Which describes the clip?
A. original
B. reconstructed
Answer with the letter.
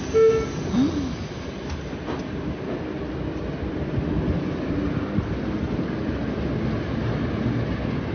A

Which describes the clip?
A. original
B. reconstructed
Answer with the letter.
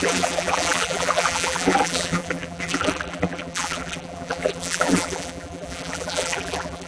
B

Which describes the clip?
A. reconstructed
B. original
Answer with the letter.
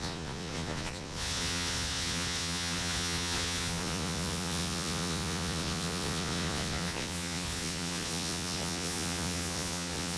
A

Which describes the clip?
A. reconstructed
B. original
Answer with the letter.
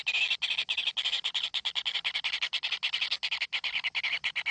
B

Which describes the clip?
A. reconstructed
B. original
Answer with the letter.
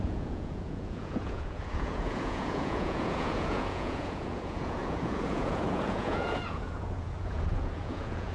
A